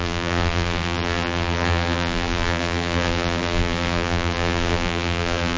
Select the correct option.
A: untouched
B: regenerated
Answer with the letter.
B